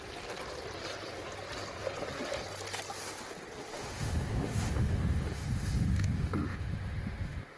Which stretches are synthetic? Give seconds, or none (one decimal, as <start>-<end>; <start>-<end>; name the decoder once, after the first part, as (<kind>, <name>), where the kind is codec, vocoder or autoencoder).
3.7-7.6 (autoencoder, DAC-VAE)